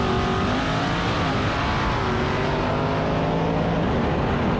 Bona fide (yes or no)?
yes